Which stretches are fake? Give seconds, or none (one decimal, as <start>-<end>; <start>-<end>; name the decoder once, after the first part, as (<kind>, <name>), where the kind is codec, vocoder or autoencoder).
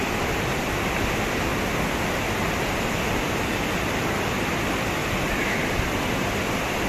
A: 0.0-1.5 (vocoder, BigVGAN v2); 2.2-5.0; 5.8-6.9